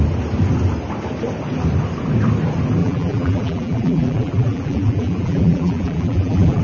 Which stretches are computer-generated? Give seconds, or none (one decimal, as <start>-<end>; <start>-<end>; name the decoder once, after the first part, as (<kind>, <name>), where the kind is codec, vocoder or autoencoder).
2.8-6.6 (vocoder, BigVGAN v2)